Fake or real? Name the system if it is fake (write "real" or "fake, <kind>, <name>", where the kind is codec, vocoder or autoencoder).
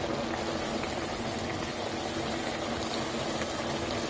real